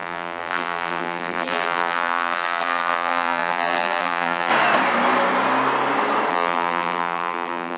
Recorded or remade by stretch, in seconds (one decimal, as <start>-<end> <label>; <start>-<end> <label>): 0.0-4.5 remade; 4.5-6.3 recorded; 6.3-7.8 remade